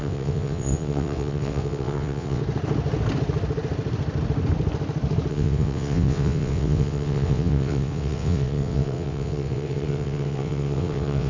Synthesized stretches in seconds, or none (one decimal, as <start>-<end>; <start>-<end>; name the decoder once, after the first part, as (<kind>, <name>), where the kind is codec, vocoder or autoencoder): 0.0-2.4 (vocoder, WaveNeXt); 5.3-11.3